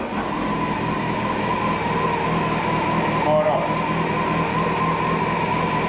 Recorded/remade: recorded